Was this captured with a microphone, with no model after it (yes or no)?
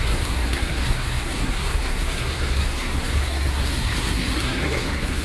no